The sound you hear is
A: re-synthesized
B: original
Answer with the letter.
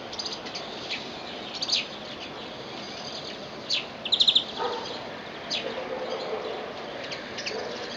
B